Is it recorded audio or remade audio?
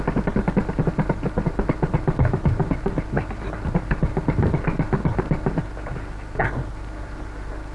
recorded